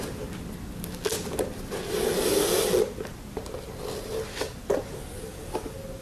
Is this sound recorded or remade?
recorded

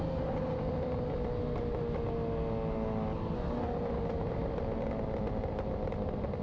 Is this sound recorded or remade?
recorded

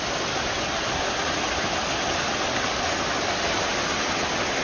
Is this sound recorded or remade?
recorded